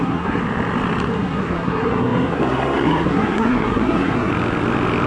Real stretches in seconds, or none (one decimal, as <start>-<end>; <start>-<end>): 0.4-1.1; 4.3-5.1